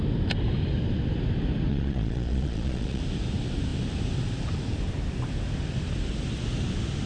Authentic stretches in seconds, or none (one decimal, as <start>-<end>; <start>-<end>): 0.0-1.7; 3.0-7.1